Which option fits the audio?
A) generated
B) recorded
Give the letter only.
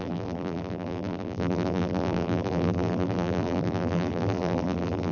A